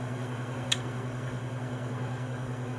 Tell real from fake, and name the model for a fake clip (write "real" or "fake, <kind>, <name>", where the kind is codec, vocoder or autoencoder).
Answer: fake, codec, SNAC